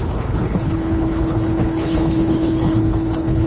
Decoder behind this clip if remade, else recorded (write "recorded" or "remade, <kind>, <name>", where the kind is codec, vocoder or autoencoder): remade, codec, HILCodec